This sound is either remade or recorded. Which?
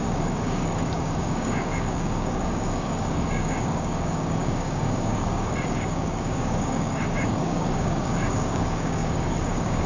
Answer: remade